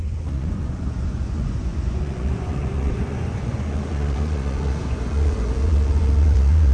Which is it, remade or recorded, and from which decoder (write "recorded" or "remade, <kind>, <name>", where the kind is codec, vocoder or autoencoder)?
remade, vocoder, Vocos